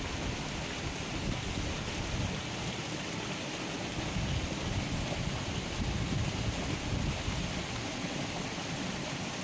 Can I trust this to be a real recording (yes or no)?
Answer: yes